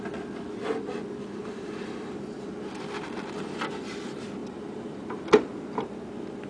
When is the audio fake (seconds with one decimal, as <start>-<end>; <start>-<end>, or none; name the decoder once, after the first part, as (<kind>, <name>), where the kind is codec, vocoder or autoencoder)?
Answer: 1.4-2.8 (vocoder, BigVGAN v2); 4.4-5.5